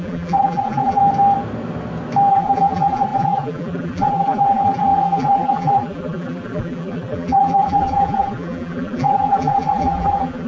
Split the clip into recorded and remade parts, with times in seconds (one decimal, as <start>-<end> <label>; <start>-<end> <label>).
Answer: 0.0-1.0 remade; 1.0-2.3 recorded; 2.3-10.5 remade